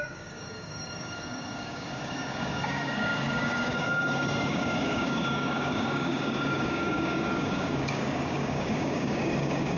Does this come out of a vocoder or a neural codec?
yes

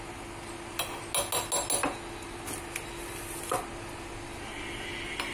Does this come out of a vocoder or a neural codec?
no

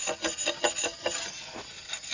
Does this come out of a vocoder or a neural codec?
no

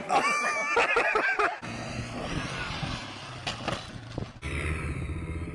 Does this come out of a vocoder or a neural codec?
no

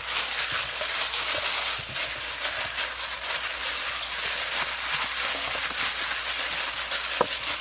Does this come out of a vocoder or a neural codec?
no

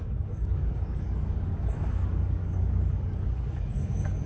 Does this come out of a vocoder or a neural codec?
yes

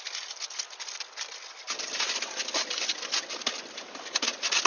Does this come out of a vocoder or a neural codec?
no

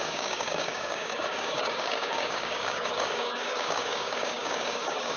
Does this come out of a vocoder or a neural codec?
yes